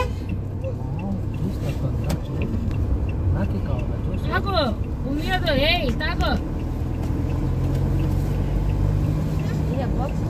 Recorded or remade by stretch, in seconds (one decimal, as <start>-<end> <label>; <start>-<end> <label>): 0.0-2.2 recorded; 2.2-2.7 remade; 2.7-10.3 recorded